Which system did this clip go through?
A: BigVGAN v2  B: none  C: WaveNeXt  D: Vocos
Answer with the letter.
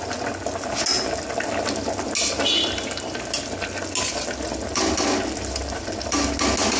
B